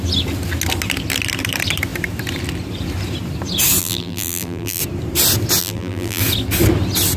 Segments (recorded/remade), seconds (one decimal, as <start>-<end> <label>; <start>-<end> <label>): 0.0-3.8 recorded; 3.8-4.8 remade; 4.8-5.6 recorded; 5.6-6.2 remade; 6.2-7.2 recorded